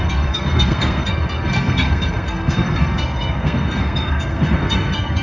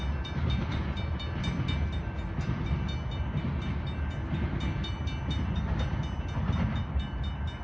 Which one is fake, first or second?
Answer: first